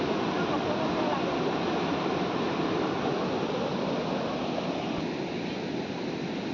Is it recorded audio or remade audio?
recorded